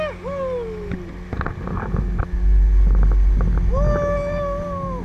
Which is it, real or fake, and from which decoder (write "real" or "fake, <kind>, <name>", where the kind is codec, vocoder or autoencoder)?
real